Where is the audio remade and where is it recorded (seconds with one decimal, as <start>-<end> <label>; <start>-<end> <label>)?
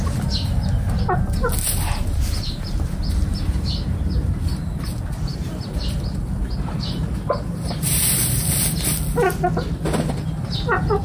0.0-5.3 recorded; 5.3-8.0 remade; 8.0-11.0 recorded